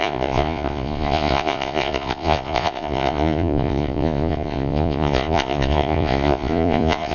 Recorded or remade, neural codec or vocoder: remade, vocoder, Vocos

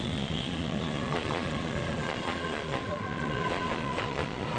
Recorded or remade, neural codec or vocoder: remade, vocoder, Vocos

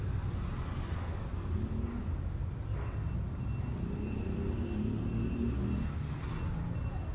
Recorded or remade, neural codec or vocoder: recorded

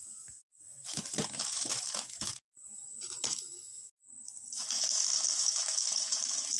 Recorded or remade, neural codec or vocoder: remade, autoencoder, DAC-VAE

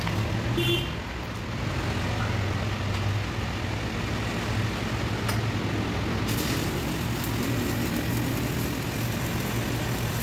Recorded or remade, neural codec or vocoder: recorded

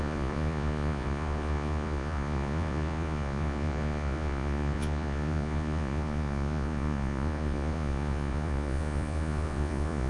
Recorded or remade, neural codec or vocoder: remade, vocoder, Vocos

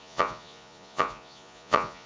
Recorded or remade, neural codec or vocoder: remade, vocoder, Vocos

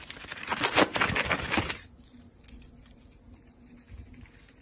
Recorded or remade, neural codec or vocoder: recorded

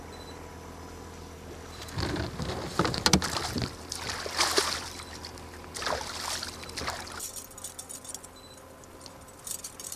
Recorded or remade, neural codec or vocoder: recorded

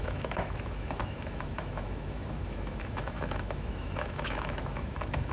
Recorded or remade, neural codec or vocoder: remade, autoencoder, DAC-VAE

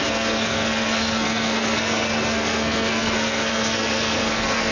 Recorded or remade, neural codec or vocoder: remade, codec, SNAC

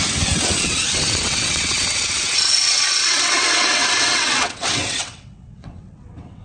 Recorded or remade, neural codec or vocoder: remade, vocoder, WaveNeXt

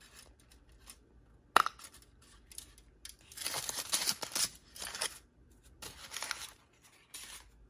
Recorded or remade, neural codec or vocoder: recorded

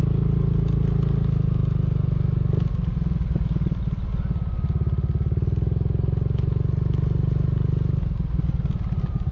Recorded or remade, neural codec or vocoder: recorded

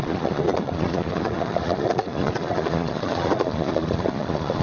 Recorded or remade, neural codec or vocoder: remade, vocoder, Vocos